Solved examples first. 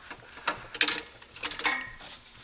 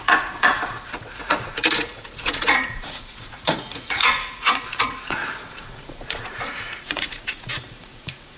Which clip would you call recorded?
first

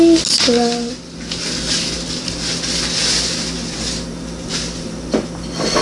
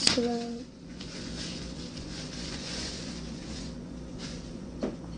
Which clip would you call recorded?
first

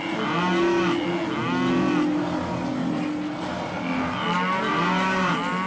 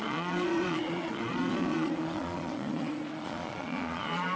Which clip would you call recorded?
first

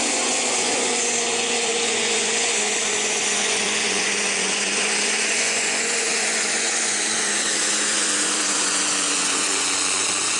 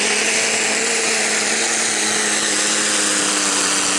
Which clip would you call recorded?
second